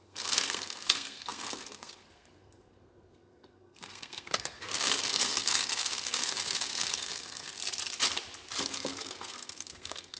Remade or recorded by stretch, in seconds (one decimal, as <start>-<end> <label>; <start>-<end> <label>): 0.0-7.6 remade; 7.6-8.6 recorded; 8.6-10.2 remade